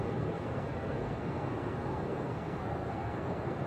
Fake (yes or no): yes